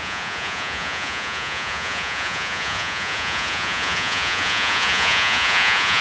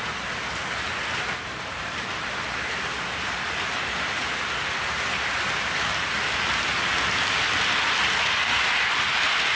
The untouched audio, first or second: second